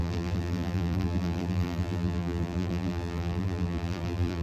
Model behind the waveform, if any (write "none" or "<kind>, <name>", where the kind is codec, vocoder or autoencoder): vocoder, BigVGAN v2